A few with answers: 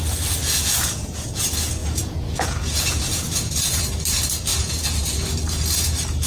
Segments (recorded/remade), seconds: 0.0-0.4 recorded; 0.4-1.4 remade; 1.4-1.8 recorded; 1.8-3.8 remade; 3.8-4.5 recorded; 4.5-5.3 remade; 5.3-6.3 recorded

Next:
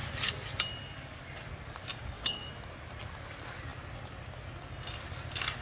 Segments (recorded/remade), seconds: 0.0-1.9 recorded; 1.9-2.5 remade; 2.5-5.6 recorded

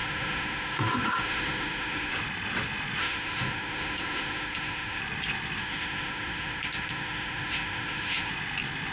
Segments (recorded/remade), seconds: 0.0-2.1 remade; 2.1-3.0 recorded; 3.0-5.0 remade; 5.0-5.6 recorded; 5.6-8.3 remade; 8.3-8.9 recorded

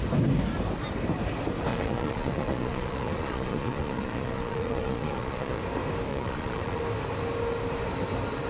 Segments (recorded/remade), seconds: 0.0-1.7 recorded; 1.7-5.6 remade; 5.6-6.1 recorded; 6.1-6.8 remade; 6.8-8.5 recorded

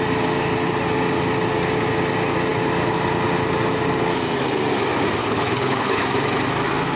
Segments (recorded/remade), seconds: 0.0-5.2 recorded; 5.2-6.0 remade; 6.0-7.0 recorded